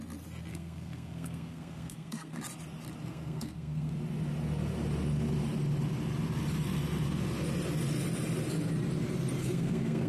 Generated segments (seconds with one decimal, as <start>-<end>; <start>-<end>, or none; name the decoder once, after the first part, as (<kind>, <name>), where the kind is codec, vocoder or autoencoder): 0.5-2.4 (codec, SNAC); 3.1-3.9; 9.4-10.1